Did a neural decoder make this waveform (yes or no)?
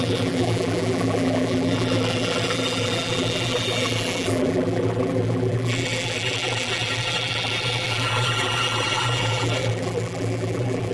yes